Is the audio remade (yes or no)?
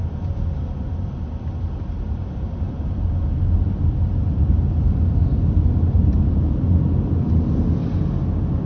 no